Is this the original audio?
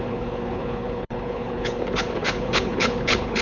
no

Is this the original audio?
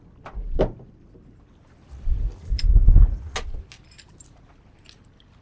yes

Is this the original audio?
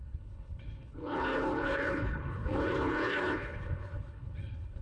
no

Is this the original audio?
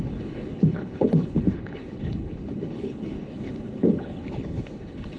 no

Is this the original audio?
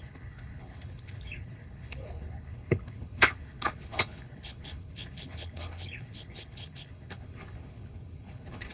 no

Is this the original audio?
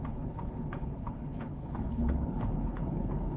no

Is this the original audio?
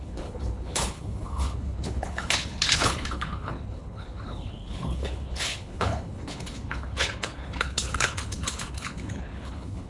no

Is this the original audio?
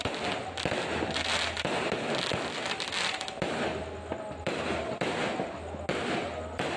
yes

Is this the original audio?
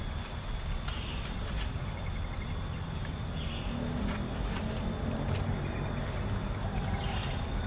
yes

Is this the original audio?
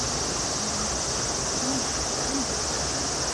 yes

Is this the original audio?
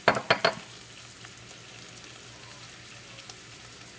yes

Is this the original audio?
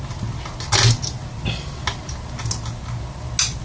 yes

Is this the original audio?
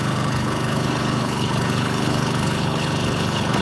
no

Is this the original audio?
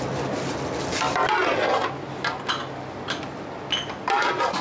yes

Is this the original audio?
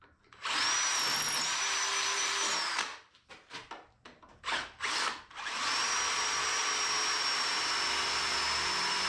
yes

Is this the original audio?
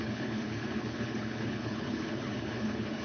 no